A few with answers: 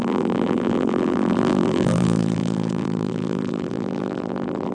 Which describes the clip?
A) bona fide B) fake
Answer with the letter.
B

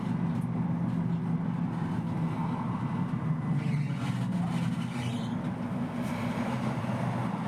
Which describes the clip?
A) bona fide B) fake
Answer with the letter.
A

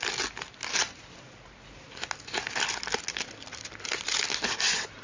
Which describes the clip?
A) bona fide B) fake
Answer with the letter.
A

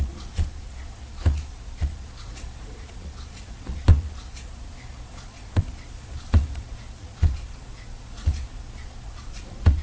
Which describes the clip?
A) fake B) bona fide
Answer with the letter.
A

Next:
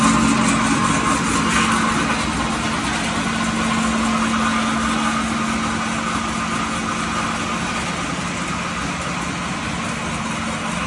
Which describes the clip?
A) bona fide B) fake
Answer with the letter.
A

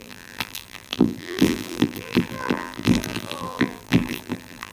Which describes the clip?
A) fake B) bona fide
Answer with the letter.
A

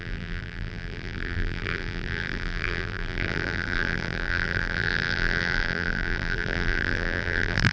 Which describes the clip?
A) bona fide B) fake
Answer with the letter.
B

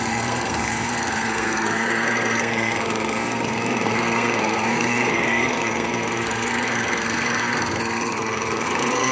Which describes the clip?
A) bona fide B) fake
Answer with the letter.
B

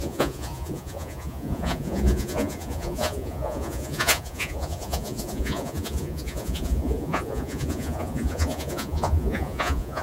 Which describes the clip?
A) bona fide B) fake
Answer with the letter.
B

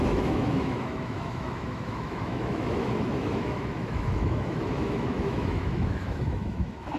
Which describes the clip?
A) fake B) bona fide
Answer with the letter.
A